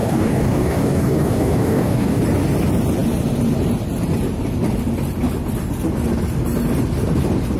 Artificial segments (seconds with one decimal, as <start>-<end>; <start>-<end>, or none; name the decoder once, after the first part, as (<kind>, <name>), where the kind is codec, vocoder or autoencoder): 0.0-2.2 (codec, DAC)